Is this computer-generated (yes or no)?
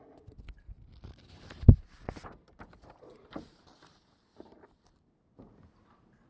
no